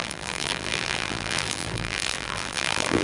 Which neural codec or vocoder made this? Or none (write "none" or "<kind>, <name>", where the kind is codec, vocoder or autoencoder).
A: vocoder, BigVGAN v2